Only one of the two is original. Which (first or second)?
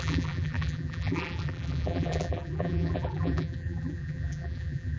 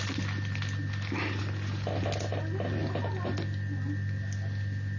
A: second